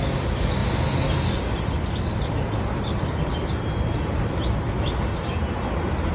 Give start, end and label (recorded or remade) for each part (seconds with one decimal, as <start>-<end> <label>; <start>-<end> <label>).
0.0-6.1 recorded